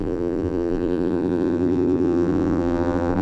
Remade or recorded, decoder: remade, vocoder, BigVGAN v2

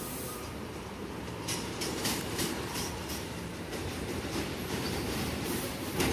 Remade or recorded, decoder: remade, vocoder, BigVGAN v2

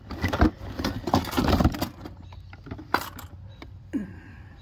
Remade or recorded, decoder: recorded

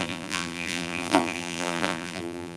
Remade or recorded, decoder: remade, vocoder, BigVGAN v2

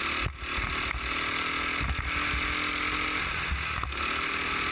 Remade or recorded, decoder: recorded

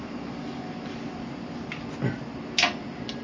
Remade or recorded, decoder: recorded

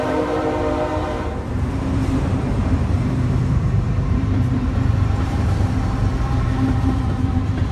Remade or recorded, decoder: remade, vocoder, BigVGAN v2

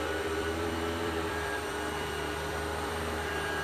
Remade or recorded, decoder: remade, vocoder, BigVGAN v2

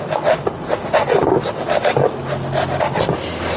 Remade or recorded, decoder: recorded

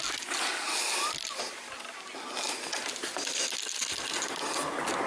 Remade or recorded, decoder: recorded